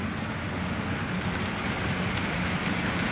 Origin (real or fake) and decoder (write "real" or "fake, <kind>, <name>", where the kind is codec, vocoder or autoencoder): real